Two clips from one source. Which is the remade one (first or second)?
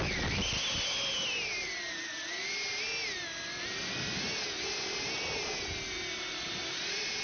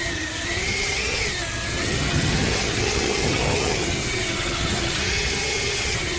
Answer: second